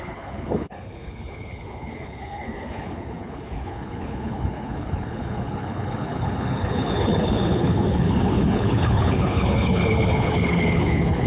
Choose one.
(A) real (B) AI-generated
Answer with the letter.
B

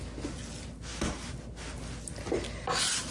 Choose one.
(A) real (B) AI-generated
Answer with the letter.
A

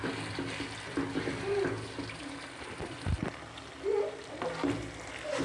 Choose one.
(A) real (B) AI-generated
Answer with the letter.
A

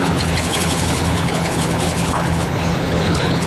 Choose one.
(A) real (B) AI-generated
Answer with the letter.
B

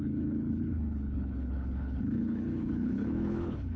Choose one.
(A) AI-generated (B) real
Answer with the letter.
A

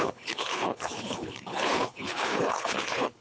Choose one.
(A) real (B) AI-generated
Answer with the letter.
B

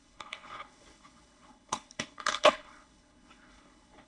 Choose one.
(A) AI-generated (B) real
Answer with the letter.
A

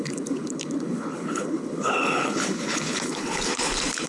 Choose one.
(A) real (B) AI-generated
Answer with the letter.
B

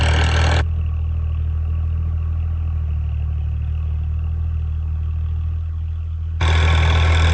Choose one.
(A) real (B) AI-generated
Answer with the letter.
A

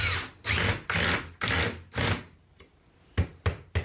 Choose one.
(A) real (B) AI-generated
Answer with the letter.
A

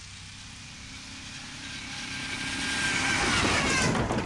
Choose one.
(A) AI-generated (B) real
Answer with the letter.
B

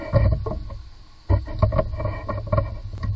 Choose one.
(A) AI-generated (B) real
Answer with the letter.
B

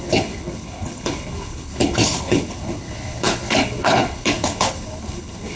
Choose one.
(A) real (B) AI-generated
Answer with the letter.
B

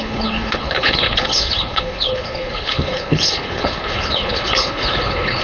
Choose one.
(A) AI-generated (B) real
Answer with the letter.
A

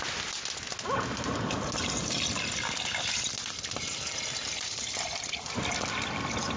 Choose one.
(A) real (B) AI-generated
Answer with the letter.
A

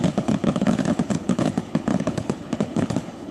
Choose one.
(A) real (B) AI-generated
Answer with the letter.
B